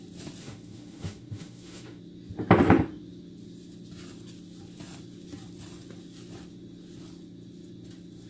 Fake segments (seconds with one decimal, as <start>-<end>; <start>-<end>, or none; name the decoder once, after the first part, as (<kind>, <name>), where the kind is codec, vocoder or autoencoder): 0.4-2.0 (autoencoder, DAC-VAE)